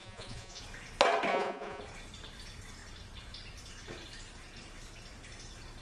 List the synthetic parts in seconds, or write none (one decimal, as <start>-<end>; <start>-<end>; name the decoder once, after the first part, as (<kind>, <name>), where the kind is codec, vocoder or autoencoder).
0.0-0.6 (vocoder, Vocos); 1.3-1.8